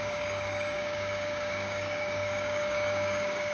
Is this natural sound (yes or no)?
no